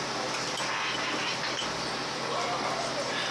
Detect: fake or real real